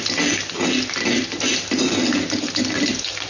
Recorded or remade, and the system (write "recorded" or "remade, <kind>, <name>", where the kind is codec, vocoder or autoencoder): recorded